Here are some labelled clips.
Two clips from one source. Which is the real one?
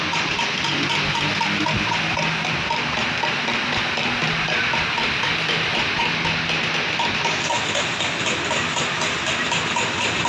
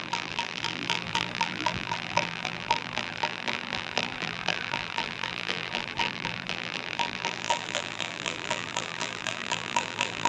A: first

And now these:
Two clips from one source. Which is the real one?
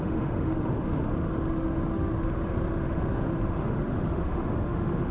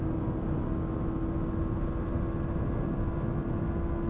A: second